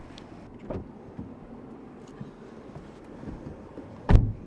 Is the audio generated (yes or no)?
yes